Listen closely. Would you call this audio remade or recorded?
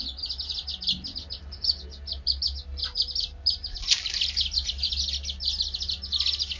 recorded